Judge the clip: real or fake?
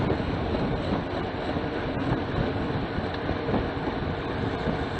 real